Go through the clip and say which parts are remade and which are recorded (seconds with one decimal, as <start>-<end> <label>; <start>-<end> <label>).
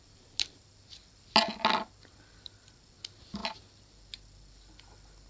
0.0-5.3 recorded